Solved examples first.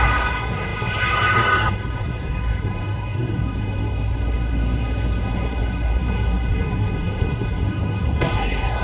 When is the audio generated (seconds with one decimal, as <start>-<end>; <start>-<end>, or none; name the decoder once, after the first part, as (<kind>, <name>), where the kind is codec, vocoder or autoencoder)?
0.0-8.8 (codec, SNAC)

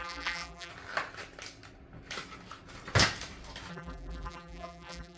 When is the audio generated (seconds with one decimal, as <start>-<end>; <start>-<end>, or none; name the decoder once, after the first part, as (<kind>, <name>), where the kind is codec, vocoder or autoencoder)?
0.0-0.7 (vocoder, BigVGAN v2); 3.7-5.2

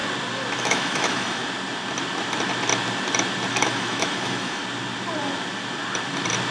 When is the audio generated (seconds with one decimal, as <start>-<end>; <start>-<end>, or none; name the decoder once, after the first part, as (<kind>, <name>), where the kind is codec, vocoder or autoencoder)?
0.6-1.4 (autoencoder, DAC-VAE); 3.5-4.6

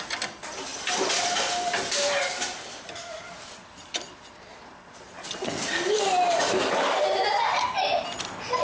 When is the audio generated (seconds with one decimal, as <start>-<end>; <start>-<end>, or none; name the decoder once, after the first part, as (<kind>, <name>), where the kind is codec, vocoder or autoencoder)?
none

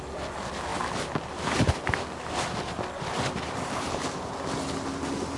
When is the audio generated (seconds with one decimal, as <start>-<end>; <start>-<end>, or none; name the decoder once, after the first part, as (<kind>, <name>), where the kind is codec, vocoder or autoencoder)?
none

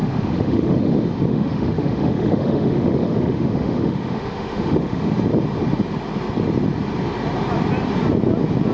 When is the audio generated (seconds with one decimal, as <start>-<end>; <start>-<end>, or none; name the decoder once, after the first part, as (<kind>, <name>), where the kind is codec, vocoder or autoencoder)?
0.0-0.9 (autoencoder, DAC-VAE); 1.3-5.1

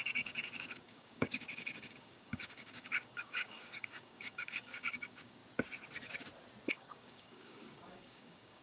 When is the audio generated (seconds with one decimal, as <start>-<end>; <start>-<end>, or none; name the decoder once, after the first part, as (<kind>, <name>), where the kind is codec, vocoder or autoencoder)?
0.0-5.4 (codec, DAC); 6.7-8.6